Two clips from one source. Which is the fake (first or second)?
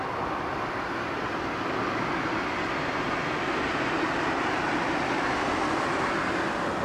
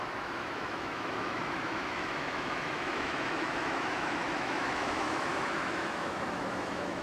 second